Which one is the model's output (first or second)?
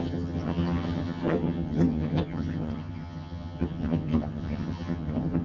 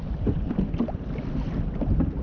first